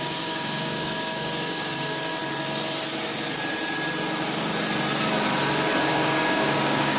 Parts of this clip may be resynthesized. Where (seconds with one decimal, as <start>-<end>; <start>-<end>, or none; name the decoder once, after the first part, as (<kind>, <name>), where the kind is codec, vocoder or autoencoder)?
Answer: 0.0-2.2 (codec, DAC); 5.9-7.0